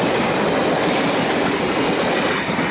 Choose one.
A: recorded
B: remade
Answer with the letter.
A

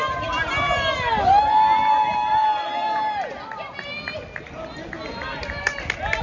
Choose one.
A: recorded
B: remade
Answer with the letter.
A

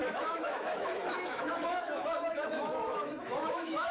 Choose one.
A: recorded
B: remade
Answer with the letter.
B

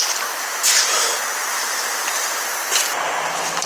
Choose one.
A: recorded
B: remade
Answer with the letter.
A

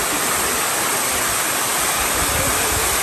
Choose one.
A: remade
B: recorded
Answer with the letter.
B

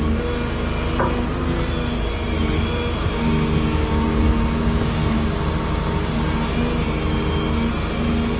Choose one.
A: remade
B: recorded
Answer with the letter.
B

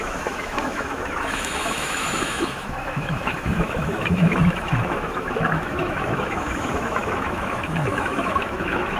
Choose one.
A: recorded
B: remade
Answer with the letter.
B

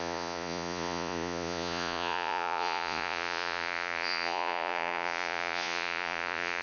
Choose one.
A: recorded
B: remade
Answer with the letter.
B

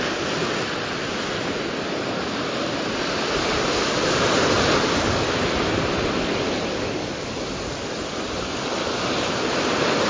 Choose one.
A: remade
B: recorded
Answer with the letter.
B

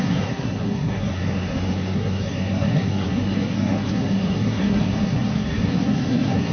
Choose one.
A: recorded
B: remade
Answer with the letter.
B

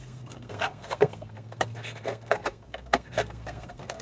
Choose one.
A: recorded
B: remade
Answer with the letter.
B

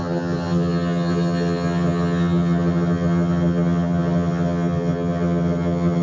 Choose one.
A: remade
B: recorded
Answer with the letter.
A